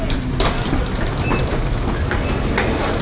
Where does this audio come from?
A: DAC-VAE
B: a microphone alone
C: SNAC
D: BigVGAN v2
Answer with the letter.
D